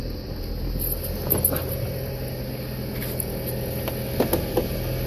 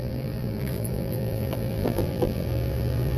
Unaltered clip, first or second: first